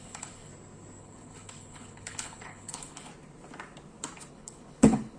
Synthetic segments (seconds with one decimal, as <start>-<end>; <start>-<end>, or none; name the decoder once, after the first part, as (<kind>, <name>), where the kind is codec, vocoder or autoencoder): 0.0-0.5 (codec, HILCodec); 1.0-3.1; 4.3-5.2